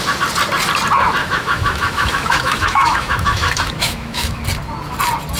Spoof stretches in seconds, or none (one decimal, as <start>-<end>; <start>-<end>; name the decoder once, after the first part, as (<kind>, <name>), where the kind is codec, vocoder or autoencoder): 1.2-4.4 (autoencoder, DAC-VAE)